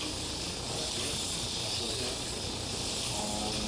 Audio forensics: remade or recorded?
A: recorded